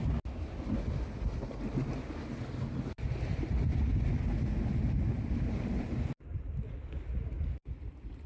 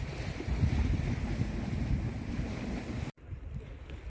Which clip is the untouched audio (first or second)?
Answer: first